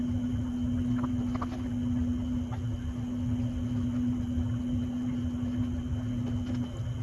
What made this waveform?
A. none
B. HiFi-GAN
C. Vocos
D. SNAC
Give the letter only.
A